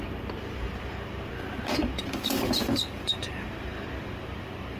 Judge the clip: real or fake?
fake